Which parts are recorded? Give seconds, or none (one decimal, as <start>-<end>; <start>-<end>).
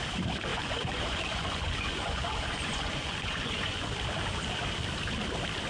0.0-0.5; 3.9-5.7